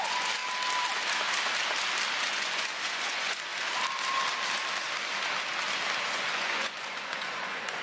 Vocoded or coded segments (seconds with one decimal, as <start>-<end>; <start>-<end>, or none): 0.0-0.4; 2.3-3.5; 6.0-7.8

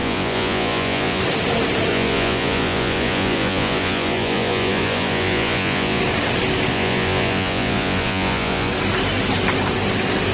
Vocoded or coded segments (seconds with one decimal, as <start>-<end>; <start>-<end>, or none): 0.0-1.2; 1.9-6.0; 6.7-8.7

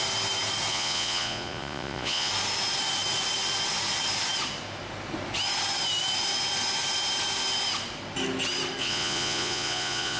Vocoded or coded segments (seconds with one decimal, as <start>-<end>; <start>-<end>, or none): 0.7-2.3; 8.8-10.2

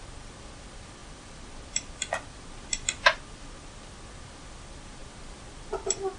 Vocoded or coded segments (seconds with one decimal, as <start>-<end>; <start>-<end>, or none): none

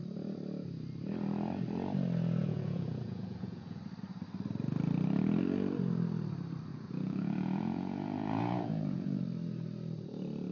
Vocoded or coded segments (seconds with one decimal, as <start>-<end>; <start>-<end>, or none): 2.4-3.8; 6.7-9.2